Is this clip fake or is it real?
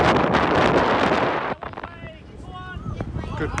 real